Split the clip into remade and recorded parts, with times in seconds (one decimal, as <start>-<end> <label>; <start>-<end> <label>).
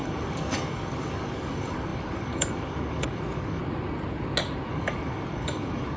0.0-3.6 remade; 3.6-4.7 recorded; 4.7-6.0 remade